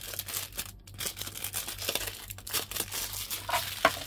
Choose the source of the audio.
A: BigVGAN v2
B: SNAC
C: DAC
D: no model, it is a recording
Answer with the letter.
D